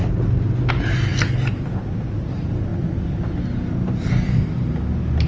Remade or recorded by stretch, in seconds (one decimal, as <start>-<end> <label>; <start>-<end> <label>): 0.0-5.3 recorded